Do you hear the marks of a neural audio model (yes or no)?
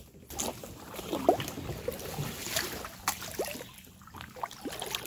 no